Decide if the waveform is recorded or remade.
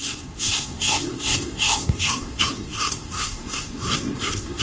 remade